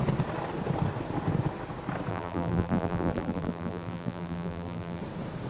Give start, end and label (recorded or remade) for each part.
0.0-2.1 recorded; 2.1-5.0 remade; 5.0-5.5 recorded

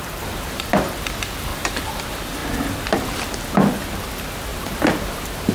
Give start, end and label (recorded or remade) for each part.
0.0-0.7 remade; 0.7-1.5 recorded; 1.5-2.0 remade; 2.0-4.5 recorded; 4.5-5.5 remade

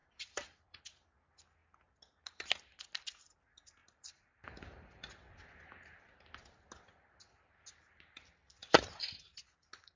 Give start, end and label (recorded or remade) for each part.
0.0-0.8 remade; 0.8-3.8 recorded; 3.8-5.1 remade; 5.1-8.6 recorded; 8.6-9.3 remade; 9.3-10.0 recorded

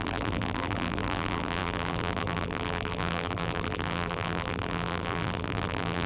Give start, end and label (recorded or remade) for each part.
0.0-6.1 remade